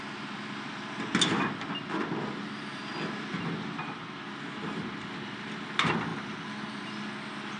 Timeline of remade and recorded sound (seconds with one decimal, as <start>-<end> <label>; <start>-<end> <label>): 0.0-6.1 recorded; 6.1-6.9 remade; 6.9-7.6 recorded